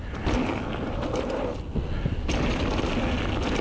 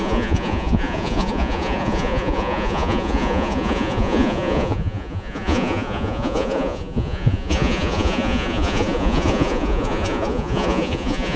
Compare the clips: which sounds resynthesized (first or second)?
second